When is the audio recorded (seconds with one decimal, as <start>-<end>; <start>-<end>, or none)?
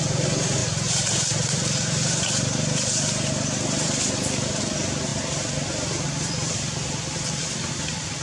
0.0-0.6; 4.6-8.2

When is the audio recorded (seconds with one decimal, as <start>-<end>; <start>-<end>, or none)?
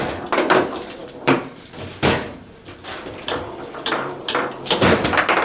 0.0-1.0; 4.2-5.4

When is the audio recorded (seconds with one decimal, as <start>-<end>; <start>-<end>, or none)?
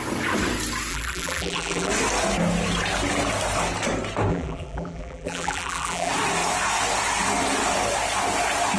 0.0-0.9; 1.9-4.3; 6.1-8.8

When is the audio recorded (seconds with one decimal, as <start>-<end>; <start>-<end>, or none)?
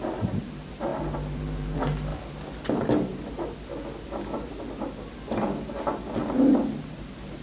2.1-2.7; 3.1-6.9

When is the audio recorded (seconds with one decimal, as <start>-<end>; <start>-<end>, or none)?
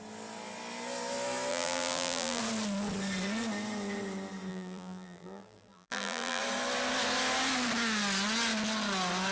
0.0-1.5; 2.4-4.5; 6.4-9.3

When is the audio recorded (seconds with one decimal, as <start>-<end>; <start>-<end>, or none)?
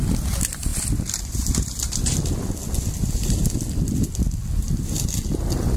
0.0-5.8